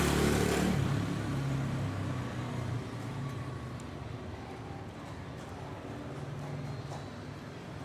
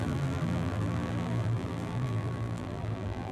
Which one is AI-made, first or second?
second